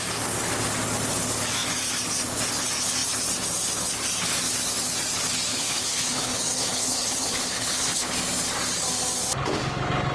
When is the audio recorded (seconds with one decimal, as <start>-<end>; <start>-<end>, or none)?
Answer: 0.0-5.5; 8.1-10.1